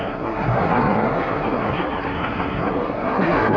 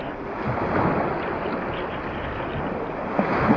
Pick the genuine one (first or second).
second